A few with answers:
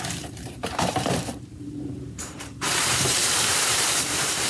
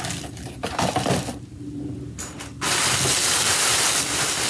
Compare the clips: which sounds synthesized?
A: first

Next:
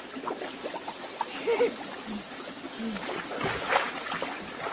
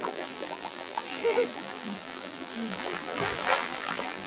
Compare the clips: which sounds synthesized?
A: second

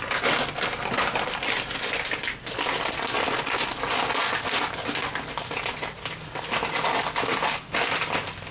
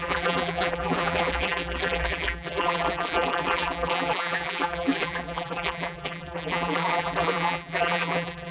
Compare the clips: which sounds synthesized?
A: second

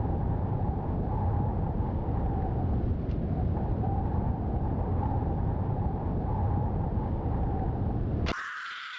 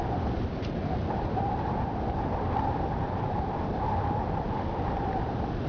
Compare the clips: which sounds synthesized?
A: second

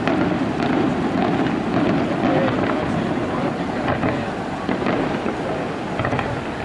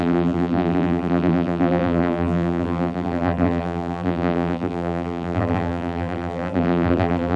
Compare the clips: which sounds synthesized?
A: second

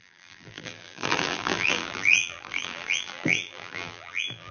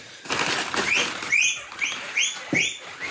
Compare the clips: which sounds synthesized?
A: first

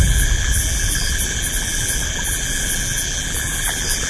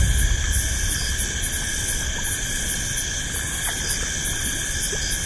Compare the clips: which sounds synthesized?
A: first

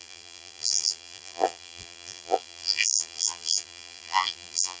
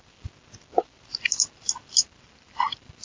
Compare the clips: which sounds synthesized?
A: first